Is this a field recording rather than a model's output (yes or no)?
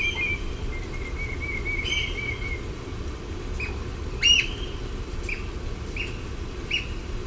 yes